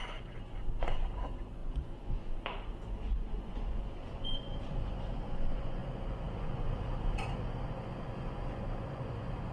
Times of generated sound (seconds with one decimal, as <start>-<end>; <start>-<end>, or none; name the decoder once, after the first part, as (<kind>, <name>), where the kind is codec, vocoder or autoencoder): 0.0-9.5 (vocoder, Vocos)